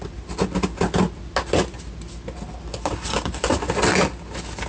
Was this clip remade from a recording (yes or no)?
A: no